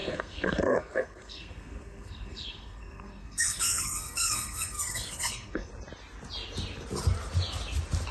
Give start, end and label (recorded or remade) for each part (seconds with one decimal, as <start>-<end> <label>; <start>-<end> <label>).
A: 0.0-5.7 remade; 5.7-8.1 recorded